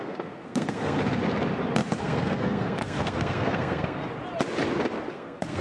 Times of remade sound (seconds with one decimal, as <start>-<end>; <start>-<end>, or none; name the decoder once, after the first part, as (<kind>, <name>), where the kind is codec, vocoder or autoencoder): 0.0-1.0 (codec, SNAC); 2.0-4.0; 5.1-5.6